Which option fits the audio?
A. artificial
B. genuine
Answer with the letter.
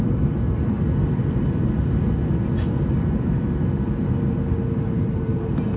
B